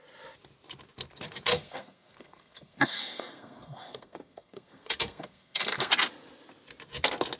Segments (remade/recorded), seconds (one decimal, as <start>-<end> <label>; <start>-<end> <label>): 0.0-1.5 recorded; 1.5-5.9 remade; 5.9-7.4 recorded